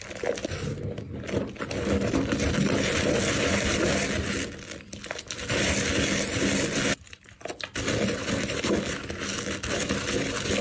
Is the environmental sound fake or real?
real